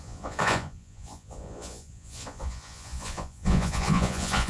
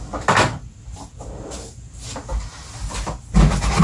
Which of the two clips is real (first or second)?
second